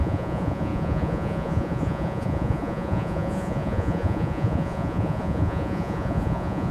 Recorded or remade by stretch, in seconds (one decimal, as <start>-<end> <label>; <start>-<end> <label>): 0.0-6.7 remade

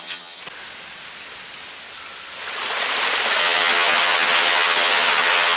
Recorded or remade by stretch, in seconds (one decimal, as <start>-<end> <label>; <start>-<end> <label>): 0.0-0.4 remade; 0.4-3.4 recorded; 3.4-5.6 remade